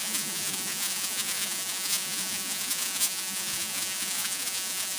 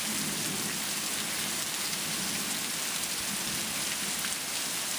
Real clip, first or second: second